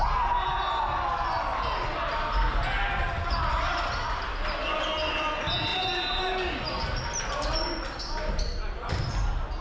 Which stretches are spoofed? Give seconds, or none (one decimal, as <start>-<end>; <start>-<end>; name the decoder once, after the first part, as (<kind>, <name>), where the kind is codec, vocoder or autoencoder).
none